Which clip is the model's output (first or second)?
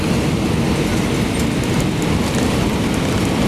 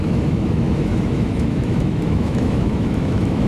second